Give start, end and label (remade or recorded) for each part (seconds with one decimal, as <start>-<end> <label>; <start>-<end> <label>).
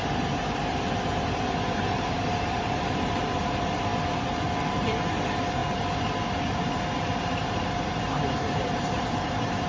0.0-3.9 remade; 3.9-4.7 recorded; 4.7-5.6 remade; 5.6-7.6 recorded; 7.6-9.7 remade